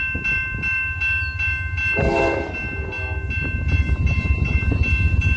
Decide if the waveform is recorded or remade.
recorded